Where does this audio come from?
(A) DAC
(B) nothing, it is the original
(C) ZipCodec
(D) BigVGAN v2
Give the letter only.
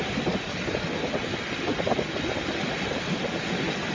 B